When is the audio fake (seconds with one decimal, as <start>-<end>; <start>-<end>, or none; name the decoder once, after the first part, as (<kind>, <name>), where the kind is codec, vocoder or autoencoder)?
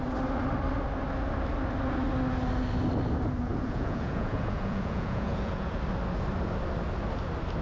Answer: 3.5-5.8 (vocoder, Vocos)